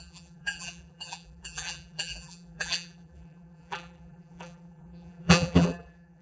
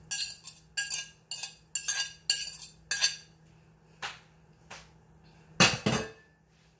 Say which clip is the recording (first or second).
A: second